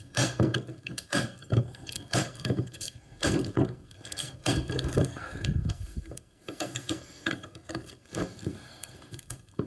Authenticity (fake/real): fake